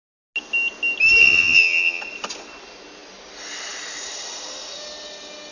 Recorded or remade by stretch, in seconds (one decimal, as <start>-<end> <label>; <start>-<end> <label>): 0.0-1.2 recorded; 1.2-2.0 remade; 2.0-5.5 recorded